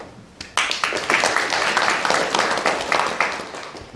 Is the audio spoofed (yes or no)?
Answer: no